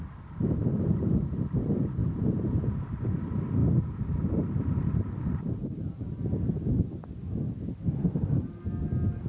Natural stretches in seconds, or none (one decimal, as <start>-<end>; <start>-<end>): 0.0-2.0; 2.6-8.1; 8.6-9.3